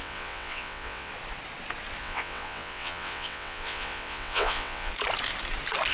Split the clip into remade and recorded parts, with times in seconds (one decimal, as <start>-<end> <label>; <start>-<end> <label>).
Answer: 0.0-1.1 remade; 1.1-2.0 recorded; 2.0-4.9 remade; 4.9-5.9 recorded